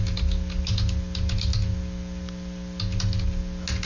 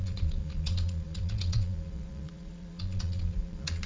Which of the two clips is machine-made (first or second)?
second